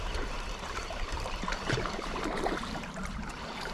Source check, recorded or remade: remade